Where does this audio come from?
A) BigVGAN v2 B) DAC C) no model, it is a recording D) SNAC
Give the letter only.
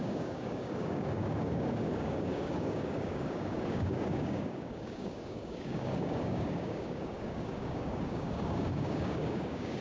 B